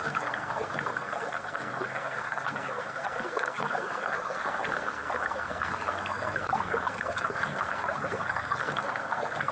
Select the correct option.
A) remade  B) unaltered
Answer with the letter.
A